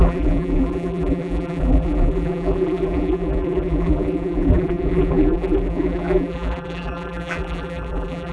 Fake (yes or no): yes